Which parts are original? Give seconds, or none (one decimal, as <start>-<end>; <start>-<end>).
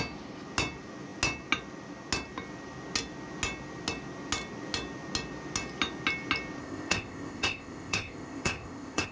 0.0-6.6